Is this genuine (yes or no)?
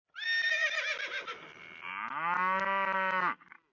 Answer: yes